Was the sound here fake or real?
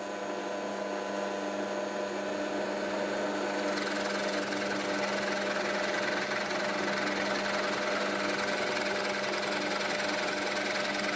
real